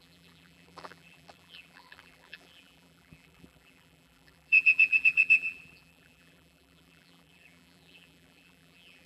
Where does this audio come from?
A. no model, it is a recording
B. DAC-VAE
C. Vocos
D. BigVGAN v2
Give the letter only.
D